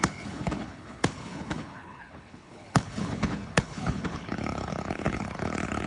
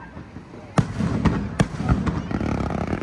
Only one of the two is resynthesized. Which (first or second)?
first